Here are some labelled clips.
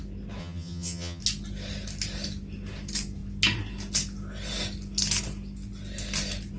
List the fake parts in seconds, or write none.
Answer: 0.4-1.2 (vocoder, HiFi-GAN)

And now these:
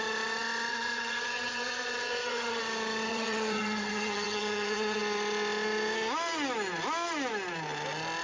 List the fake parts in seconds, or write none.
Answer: 0.7-2.6 (vocoder, HiFi-GAN); 3.1-5.0

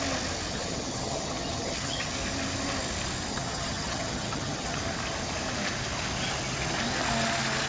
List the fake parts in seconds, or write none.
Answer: 0.5-2.1 (vocoder, HiFi-GAN); 3.3-4.8

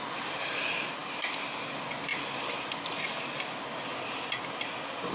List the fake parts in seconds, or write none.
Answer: none

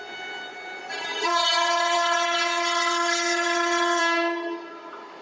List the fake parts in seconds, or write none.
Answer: 0.9-4.0 (vocoder, HiFi-GAN)